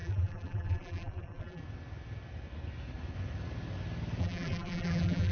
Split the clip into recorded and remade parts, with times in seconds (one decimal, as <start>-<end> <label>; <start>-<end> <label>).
0.0-1.6 remade; 1.6-4.2 recorded; 4.2-5.3 remade